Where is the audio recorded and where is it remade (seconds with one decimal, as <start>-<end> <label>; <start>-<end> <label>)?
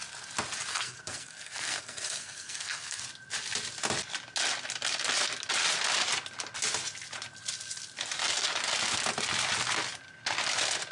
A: 0.0-0.7 recorded; 0.7-3.0 remade; 3.0-10.9 recorded